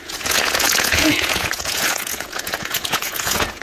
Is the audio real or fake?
fake